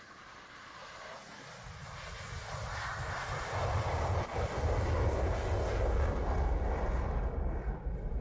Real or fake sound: real